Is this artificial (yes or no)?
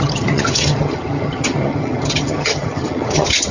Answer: yes